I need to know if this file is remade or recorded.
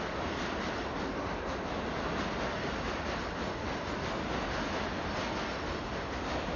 recorded